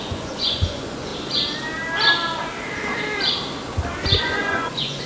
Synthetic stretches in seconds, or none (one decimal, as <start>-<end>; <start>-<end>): 0.0-1.1; 4.2-5.1